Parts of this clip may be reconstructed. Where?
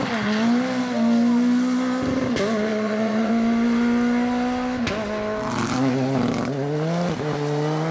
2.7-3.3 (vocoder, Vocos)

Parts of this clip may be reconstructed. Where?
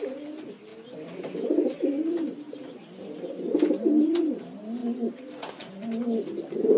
none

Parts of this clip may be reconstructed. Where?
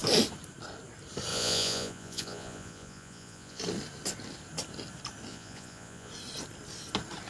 1.3-3.6 (vocoder, Vocos); 5.3-6.1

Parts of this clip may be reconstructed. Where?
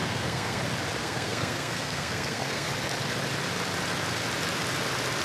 0.0-0.6 (codec, SNAC); 1.0-2.7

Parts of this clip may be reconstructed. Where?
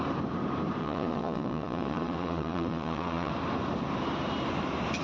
0.8-3.3 (vocoder, Vocos)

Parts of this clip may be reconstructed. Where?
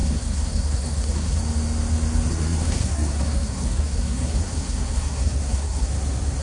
0.0-1.4 (codec, SNAC); 2.3-5.9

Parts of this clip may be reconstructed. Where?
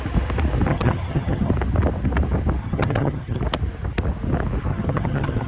0.7-1.5 (vocoder, HiFi-GAN); 2.6-3.4; 4.7-5.5